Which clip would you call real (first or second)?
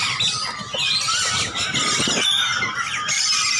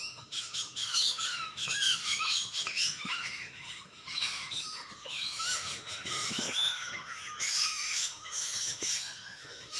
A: first